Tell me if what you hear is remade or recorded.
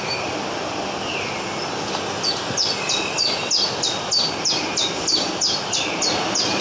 recorded